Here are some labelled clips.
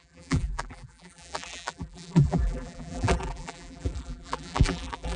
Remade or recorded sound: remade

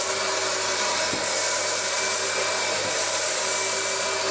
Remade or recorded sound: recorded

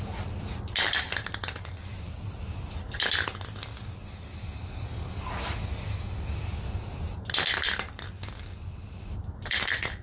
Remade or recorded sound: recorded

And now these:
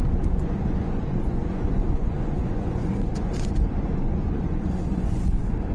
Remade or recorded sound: remade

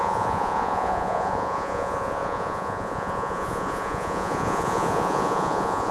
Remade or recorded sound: remade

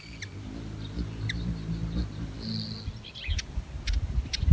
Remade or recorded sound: recorded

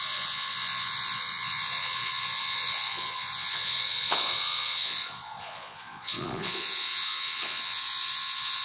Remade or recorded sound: remade